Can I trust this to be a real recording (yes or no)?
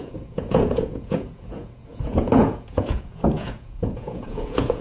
no